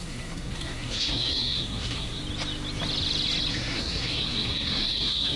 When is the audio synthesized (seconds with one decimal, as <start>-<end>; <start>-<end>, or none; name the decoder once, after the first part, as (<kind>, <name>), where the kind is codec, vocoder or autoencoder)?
0.0-2.2 (codec, SNAC); 3.5-5.4